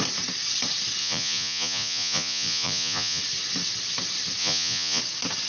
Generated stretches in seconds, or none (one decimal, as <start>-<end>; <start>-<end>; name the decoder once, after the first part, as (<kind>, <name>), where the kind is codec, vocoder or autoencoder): 1.0-3.2 (vocoder, Vocos); 4.4-5.0